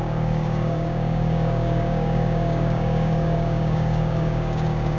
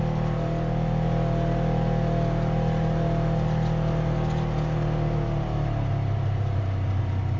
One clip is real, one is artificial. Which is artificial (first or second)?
first